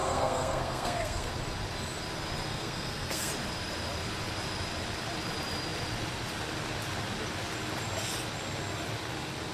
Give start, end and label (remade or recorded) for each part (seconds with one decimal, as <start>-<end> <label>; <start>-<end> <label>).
0.0-1.3 remade; 1.3-2.5 recorded; 2.5-3.3 remade; 3.3-9.5 recorded